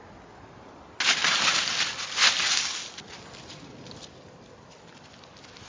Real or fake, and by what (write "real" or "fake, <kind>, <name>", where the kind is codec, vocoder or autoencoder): real